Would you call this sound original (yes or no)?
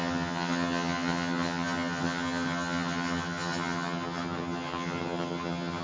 no